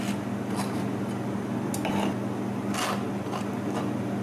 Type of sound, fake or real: real